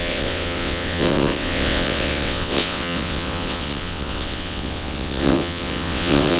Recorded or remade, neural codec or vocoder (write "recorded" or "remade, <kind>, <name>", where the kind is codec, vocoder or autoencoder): remade, vocoder, WaveNeXt